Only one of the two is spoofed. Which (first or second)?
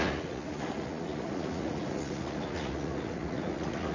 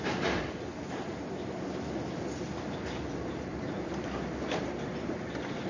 first